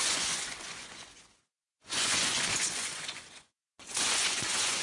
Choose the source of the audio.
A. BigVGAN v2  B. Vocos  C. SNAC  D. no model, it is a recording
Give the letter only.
B